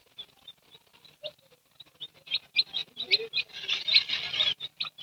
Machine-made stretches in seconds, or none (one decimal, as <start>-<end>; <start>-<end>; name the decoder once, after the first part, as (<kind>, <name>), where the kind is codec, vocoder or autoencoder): 0.9-1.6 (vocoder, BigVGAN v2)